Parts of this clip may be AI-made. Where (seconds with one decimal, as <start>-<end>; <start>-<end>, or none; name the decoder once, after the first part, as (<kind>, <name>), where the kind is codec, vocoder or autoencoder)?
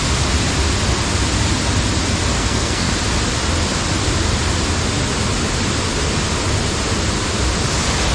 2.3-2.9 (codec, SNAC)